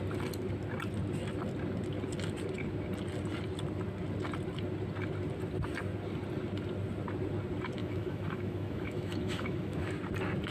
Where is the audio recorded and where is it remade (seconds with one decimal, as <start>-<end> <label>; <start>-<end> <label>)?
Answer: 0.0-7.8 recorded; 7.8-9.9 remade; 9.9-10.5 recorded